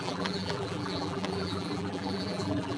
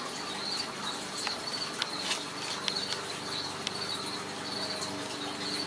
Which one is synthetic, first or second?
first